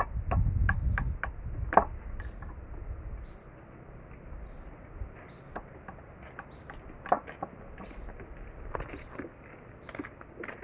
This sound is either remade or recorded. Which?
recorded